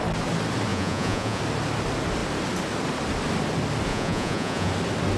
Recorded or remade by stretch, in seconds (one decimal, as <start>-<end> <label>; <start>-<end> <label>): 0.0-0.7 recorded; 0.7-1.4 remade; 1.4-3.9 recorded; 3.9-4.7 remade; 4.7-5.2 recorded